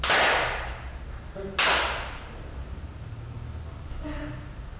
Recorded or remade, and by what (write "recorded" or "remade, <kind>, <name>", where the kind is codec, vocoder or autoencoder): recorded